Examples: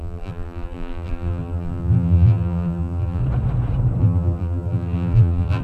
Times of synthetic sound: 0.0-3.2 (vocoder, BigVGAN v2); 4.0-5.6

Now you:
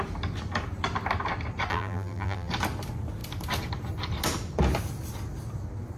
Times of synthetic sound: 1.7-2.5 (vocoder, BigVGAN v2)

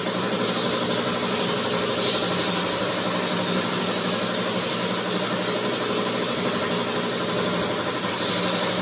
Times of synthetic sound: none

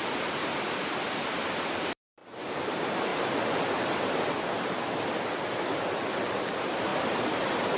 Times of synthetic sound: 0.0-2.2 (vocoder, BigVGAN v2); 2.7-3.1; 5.4-7.8

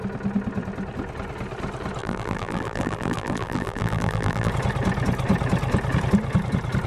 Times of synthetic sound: 2.0-4.5 (vocoder, BigVGAN v2)